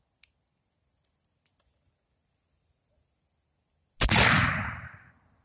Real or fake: real